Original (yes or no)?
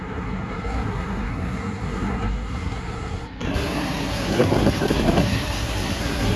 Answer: no